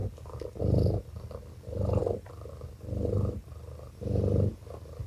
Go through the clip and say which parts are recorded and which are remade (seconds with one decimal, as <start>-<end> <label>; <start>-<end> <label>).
0.0-5.1 recorded